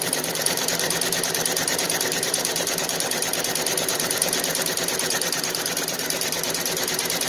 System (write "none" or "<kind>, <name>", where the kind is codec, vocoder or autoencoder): vocoder, BigVGAN v2